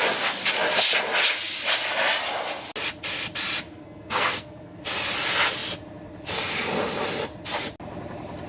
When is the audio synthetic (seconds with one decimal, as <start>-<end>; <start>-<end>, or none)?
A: 3.7-4.8